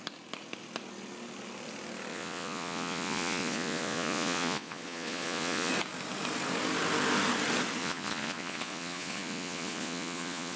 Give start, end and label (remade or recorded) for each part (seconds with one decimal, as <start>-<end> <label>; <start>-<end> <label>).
0.0-2.1 recorded; 2.1-5.7 remade; 5.7-7.8 recorded; 7.8-10.6 remade